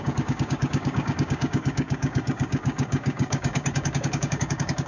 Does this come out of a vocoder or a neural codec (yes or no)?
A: yes